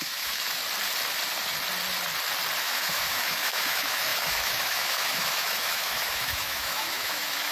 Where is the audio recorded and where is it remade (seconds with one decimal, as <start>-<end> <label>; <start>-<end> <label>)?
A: 0.0-0.6 remade; 0.6-2.6 recorded; 2.6-7.5 remade